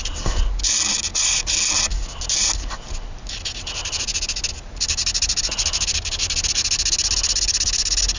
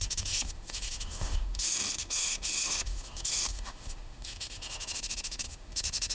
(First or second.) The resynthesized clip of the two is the second